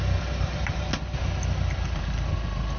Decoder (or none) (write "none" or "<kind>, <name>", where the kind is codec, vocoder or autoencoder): none